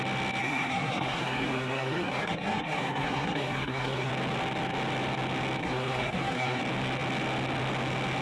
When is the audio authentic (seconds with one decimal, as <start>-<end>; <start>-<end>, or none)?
0.0-0.4; 4.1-5.6; 6.6-8.2